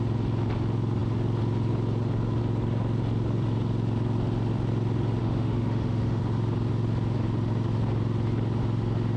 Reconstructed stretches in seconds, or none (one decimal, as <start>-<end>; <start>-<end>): 5.2-6.2